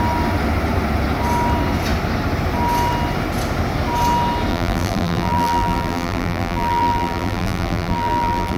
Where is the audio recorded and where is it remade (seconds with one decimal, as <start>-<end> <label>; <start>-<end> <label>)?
0.0-4.5 recorded; 4.5-8.6 remade